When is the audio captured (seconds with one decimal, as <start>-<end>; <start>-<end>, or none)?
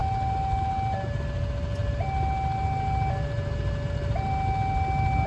0.0-5.3